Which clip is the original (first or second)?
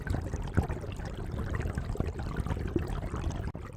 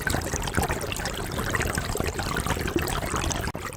first